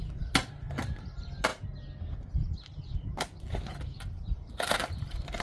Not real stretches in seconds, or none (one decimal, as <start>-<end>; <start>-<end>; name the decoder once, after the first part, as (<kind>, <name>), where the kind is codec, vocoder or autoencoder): none